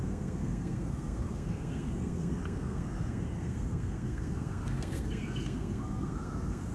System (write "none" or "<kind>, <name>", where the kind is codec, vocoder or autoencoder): codec, SNAC